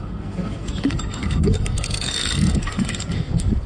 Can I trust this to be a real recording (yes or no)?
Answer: no